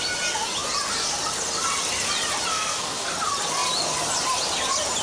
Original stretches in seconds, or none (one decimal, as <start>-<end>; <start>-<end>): 0.0-2.5; 3.1-5.0